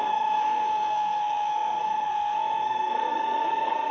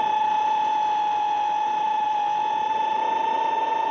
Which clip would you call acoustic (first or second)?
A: second